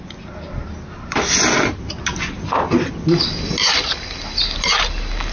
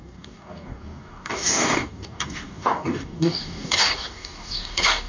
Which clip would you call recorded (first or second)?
first